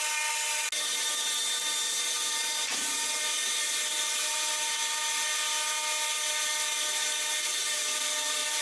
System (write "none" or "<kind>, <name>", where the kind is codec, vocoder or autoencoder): none